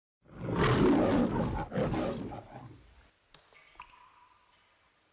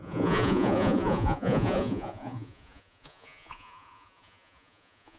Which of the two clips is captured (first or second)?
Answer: first